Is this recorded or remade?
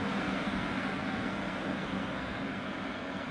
remade